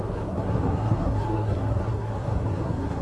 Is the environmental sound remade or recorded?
remade